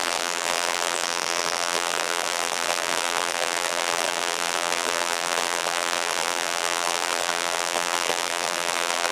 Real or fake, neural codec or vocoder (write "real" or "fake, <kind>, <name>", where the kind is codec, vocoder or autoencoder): fake, vocoder, BigVGAN v2